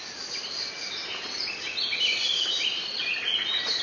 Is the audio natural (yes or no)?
yes